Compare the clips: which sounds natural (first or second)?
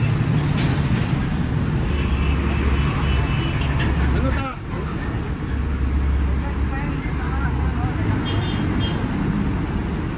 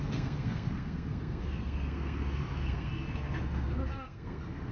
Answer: first